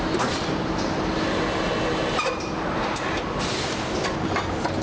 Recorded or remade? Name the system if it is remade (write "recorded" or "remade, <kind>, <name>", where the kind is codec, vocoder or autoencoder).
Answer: recorded